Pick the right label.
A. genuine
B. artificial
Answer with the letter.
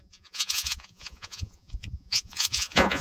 B